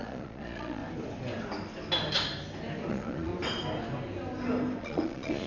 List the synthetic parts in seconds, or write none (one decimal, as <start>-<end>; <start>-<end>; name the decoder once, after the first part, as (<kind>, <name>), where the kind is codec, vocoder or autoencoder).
0.0-0.8 (vocoder, Vocos); 2.9-3.3; 4.8-5.5